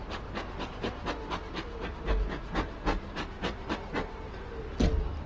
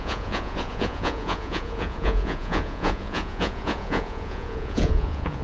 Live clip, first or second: first